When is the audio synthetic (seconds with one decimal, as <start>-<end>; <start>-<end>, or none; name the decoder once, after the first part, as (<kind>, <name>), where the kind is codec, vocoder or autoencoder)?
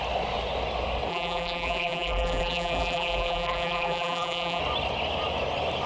1.1-4.6 (vocoder, BigVGAN v2)